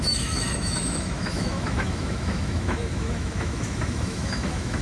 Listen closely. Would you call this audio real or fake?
fake